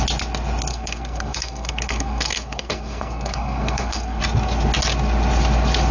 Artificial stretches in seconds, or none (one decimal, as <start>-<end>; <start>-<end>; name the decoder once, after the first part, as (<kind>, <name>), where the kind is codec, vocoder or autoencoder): 0.7-4.2 (codec, SNAC)